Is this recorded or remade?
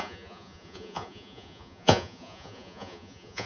remade